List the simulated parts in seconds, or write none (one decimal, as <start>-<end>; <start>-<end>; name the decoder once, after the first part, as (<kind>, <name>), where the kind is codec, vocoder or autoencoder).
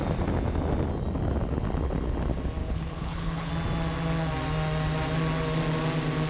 2.6-3.5 (codec, HILCodec)